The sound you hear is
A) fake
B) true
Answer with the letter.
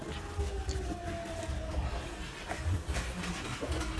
B